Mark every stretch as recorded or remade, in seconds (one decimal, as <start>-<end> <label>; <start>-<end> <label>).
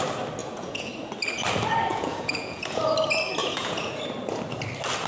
0.0-0.4 recorded; 0.4-0.9 remade; 0.9-1.9 recorded; 1.9-2.8 remade; 2.8-3.4 recorded; 3.4-4.0 remade; 4.0-5.1 recorded